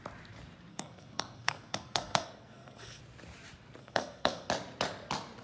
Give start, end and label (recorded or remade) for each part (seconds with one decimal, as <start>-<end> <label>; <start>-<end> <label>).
0.0-0.7 recorded; 0.7-3.0 remade; 3.0-3.8 recorded; 3.8-4.5 remade; 4.5-5.4 recorded